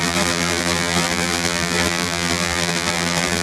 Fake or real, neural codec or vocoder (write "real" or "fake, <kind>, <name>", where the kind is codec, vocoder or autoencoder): fake, vocoder, BigVGAN v2